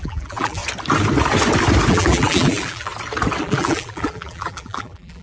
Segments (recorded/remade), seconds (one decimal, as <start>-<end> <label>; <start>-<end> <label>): 0.0-0.6 remade; 0.6-1.9 recorded; 1.9-2.9 remade; 2.9-3.4 recorded; 3.4-5.2 remade